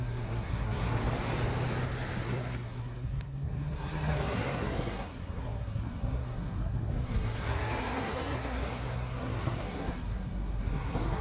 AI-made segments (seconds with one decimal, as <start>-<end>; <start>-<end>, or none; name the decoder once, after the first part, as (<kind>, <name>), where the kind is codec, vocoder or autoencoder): 0.0-1.0 (codec, SNAC); 2.2-11.2